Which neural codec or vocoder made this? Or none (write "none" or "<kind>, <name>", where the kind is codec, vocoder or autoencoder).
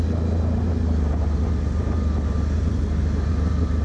none